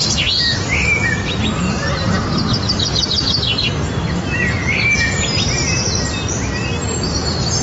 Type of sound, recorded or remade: recorded